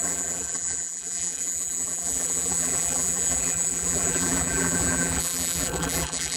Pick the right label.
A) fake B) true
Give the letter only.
A